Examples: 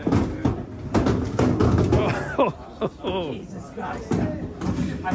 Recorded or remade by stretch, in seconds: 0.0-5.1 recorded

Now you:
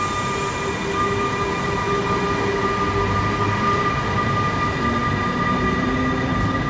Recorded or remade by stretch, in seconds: 0.0-6.7 recorded

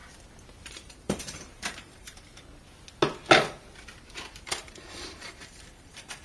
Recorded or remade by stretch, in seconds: 0.0-0.7 recorded; 0.7-2.1 remade; 2.1-4.4 recorded; 4.4-6.2 remade